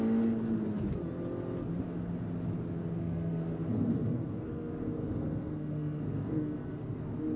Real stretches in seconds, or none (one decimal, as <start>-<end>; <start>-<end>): 0.0-3.0; 7.0-7.4